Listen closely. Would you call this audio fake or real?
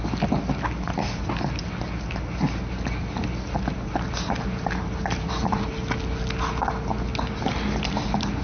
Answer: real